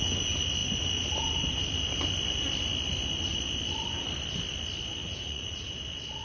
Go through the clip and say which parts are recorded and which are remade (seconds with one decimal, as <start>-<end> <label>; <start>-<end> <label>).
0.0-5.0 recorded; 5.0-5.7 remade; 5.7-6.2 recorded